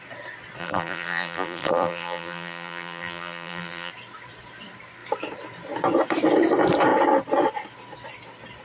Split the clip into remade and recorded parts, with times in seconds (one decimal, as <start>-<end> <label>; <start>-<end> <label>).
0.0-0.6 recorded; 0.6-3.9 remade; 3.9-8.6 recorded